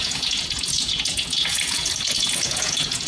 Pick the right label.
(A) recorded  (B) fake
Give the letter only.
B